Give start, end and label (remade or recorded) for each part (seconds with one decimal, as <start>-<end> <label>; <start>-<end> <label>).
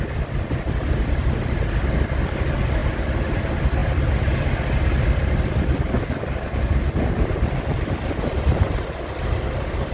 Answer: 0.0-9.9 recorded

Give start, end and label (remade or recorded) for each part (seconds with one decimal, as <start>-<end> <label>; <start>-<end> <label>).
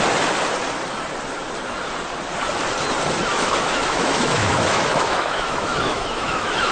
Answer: 0.0-3.3 recorded; 3.3-6.7 remade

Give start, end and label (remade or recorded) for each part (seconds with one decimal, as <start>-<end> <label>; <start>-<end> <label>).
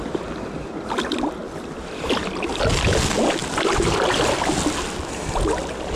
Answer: 0.0-6.0 recorded